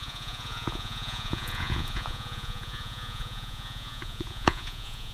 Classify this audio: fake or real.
fake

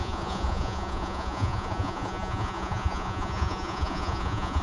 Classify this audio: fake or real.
fake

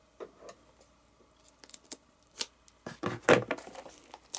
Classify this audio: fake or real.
real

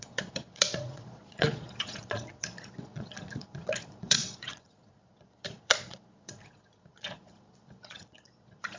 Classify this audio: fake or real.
fake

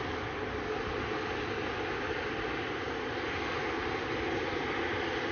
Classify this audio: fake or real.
real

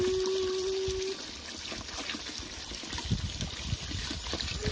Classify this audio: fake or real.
real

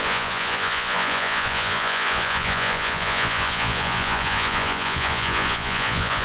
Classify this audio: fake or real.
fake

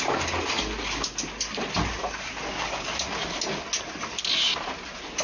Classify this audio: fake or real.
real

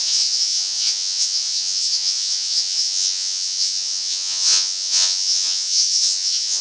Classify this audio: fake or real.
fake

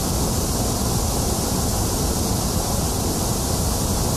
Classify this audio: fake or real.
real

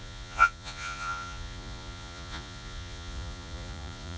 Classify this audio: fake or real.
fake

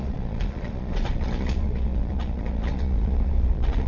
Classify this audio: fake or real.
fake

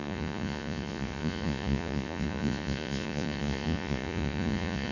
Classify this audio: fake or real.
fake